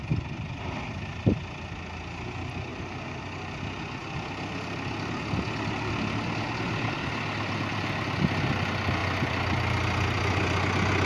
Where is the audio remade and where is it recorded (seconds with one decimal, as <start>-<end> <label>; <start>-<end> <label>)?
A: 0.0-11.1 recorded